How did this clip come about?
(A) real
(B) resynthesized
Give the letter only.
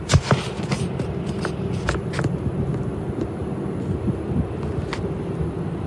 A